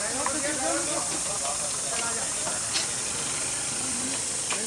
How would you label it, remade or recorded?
recorded